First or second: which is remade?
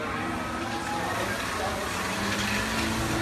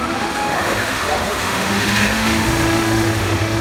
second